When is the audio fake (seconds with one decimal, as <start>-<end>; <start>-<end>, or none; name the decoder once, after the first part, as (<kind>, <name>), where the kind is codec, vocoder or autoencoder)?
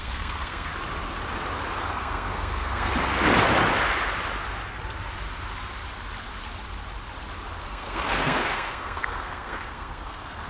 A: 0.0-0.7 (codec, SNAC); 1.8-2.9; 7.6-10.5